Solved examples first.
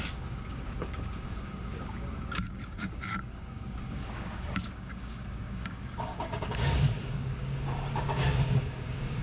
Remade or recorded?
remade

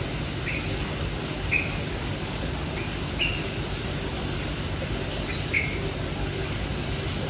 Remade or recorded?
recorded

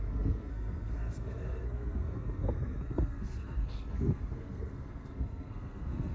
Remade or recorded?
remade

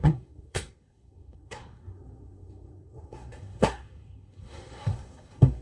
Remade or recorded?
remade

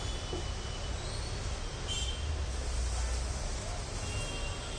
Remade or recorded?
recorded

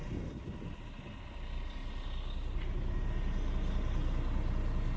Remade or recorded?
recorded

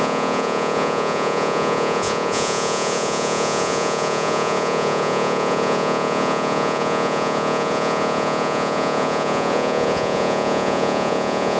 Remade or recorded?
remade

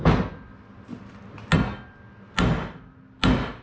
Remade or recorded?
recorded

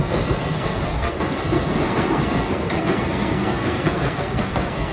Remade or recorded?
remade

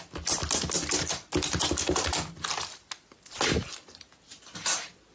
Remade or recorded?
recorded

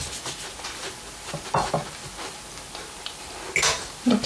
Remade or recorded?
recorded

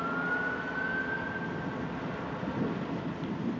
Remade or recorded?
recorded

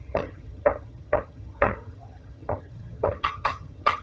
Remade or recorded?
remade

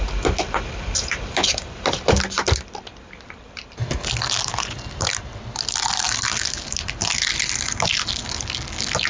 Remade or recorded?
recorded